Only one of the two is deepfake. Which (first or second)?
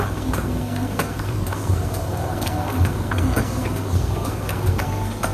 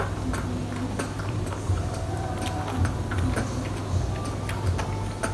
first